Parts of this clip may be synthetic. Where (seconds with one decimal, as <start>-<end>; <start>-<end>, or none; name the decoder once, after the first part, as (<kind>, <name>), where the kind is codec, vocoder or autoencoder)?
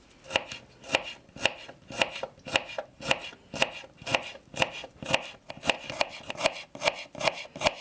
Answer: none